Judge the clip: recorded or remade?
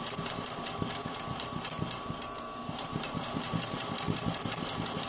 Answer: remade